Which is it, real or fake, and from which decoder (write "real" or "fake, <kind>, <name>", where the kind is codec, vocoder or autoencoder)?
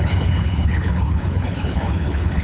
fake, codec, HILCodec